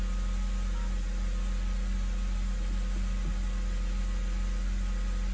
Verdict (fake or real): real